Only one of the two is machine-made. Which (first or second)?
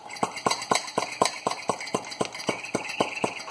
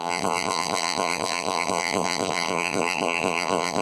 second